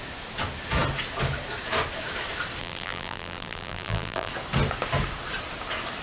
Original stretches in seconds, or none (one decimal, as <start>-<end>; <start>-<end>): 0.0-2.6; 4.3-6.0